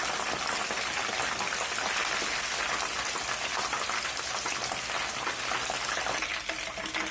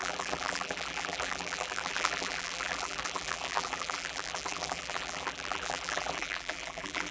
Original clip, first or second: first